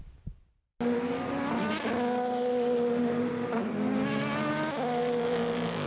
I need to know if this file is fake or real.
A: real